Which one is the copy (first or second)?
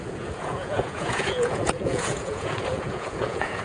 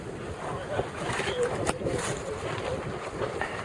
first